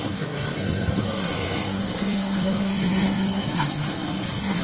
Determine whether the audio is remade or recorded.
remade